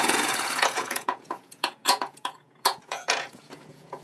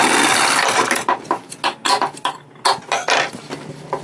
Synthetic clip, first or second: first